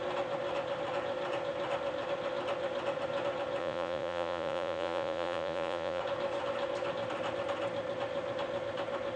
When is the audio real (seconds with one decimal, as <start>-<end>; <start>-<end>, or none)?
0.0-3.6; 6.0-9.2

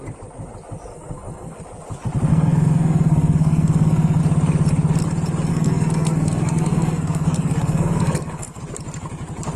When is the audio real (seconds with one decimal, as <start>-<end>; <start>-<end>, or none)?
0.0-0.9; 1.6-2.3; 4.2-5.5; 8.6-9.6

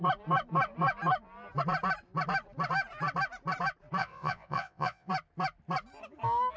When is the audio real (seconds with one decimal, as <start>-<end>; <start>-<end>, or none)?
0.0-4.0; 5.1-6.6

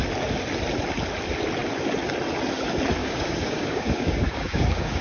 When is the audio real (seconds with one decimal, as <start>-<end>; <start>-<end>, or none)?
0.0-3.0

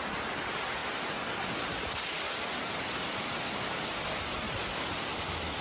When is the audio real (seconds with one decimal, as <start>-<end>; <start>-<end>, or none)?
0.0-5.6

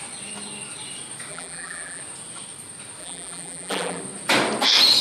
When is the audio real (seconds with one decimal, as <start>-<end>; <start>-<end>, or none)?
0.0-1.3; 2.0-3.0; 4.0-5.0